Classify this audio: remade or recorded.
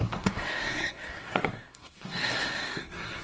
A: remade